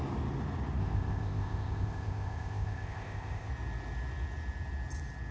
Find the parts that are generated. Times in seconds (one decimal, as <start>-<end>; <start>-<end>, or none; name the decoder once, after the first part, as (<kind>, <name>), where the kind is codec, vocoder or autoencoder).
0.8-3.5 (codec, ZipCodec)